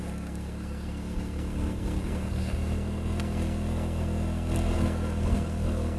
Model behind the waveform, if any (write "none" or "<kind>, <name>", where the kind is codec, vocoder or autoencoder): codec, SNAC